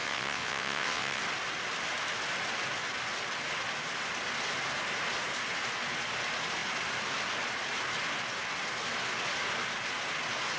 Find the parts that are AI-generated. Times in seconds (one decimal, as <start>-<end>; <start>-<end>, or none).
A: 0.0-1.2